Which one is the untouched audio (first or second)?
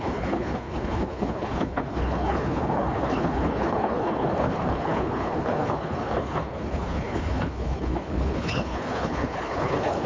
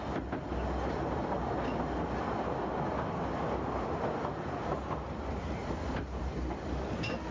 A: second